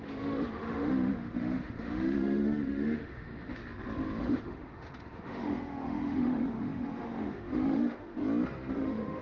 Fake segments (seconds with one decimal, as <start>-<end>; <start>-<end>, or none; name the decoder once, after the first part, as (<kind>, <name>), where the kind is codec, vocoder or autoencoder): 0.0-3.6 (autoencoder, DAC-VAE); 4.2-8.2; 8.7-9.2